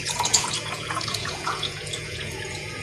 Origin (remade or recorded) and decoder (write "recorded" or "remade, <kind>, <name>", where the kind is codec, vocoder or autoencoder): remade, vocoder, Vocos